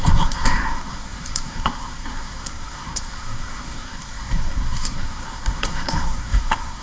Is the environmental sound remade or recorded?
remade